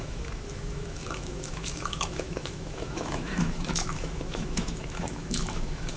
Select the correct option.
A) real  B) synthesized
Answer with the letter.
B